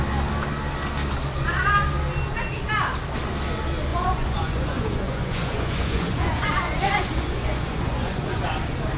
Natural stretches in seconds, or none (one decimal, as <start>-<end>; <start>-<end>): 0.0-3.9; 8.6-9.0